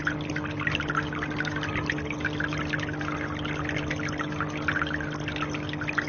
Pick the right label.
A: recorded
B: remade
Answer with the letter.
A